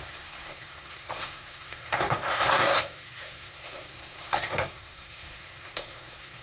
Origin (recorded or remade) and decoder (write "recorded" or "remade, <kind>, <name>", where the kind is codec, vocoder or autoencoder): remade, codec, SNAC